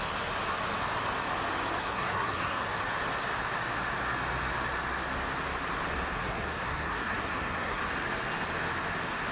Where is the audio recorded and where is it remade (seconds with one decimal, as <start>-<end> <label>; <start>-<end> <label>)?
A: 0.0-1.8 recorded; 1.8-2.8 remade; 2.8-6.2 recorded; 6.2-7.8 remade; 7.8-9.3 recorded